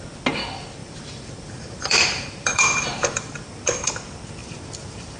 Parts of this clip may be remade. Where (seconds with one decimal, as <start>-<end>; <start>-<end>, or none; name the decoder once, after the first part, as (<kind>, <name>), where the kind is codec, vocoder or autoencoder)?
0.8-3.9 (vocoder, BigVGAN v2); 4.4-5.2